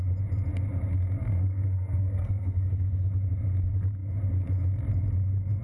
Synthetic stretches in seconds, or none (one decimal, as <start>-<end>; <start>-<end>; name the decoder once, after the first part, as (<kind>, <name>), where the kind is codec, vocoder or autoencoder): 1.2-2.7 (codec, SNAC)